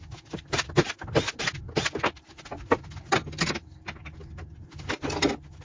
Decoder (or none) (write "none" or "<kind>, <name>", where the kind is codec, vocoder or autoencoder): none